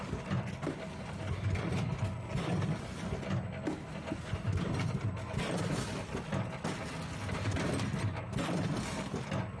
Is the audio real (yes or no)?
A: yes